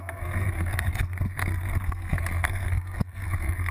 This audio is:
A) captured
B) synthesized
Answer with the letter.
B